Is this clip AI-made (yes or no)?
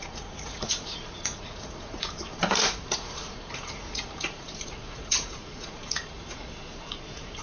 yes